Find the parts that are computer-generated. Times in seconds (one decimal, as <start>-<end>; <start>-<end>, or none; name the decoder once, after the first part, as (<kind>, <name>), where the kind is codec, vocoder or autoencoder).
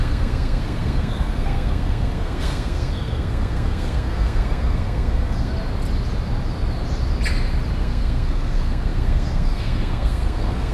0.0-5.5 (codec, SNAC); 7.8-10.7